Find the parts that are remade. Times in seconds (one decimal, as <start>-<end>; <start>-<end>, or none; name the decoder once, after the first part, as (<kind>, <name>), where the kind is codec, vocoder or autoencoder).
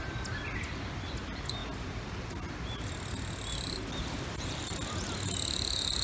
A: none